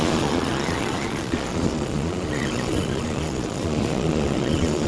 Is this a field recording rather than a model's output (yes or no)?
no